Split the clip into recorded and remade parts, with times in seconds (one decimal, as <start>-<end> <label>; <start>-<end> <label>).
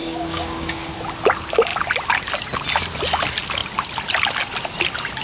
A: 0.0-0.9 remade; 0.9-5.2 recorded